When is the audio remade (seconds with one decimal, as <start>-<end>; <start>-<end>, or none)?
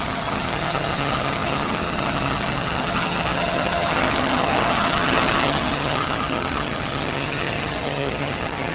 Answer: 0.0-8.7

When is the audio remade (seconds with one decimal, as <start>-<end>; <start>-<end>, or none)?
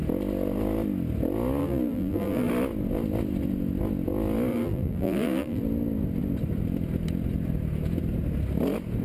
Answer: 1.6-2.5; 4.5-5.6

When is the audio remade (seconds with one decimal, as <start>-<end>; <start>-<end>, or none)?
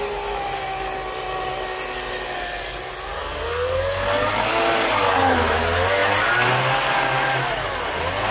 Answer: none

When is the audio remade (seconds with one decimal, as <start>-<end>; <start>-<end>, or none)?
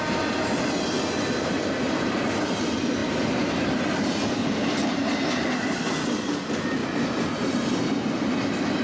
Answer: none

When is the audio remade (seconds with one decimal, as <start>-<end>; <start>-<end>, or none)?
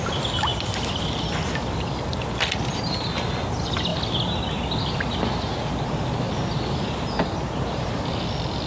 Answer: 0.0-0.5; 1.5-2.1; 3.0-3.9; 7.2-8.7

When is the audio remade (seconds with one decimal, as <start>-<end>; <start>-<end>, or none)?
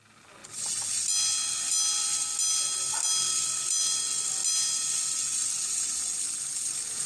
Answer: none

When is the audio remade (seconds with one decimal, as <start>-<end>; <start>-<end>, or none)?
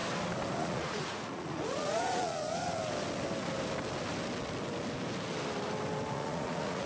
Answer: 0.6-2.8; 6.1-6.9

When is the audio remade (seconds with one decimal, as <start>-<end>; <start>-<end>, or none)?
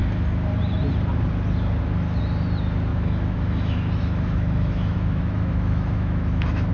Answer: 2.9-6.7